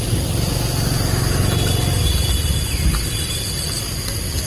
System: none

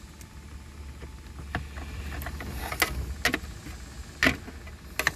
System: none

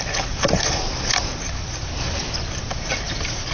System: none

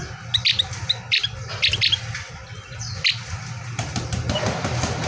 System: none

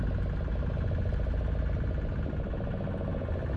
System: none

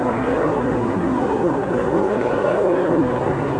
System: codec, SNAC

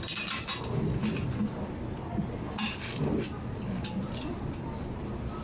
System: none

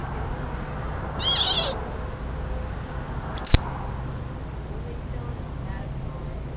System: none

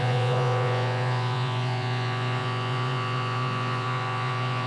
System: vocoder, Vocos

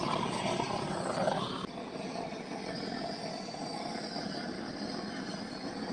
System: none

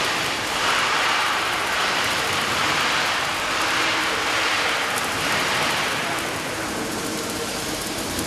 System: vocoder, BigVGAN v2